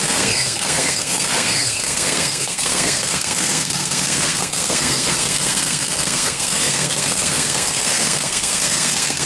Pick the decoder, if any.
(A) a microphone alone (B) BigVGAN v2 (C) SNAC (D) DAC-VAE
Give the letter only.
C